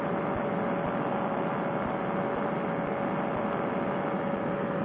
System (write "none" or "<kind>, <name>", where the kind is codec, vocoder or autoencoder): none